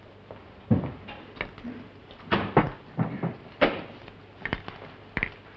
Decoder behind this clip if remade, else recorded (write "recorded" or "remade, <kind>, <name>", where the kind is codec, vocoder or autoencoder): recorded